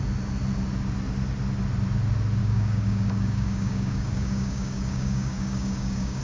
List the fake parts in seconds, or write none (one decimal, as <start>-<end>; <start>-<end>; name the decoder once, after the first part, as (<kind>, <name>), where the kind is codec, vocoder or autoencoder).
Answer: 2.4-6.2 (codec, DAC)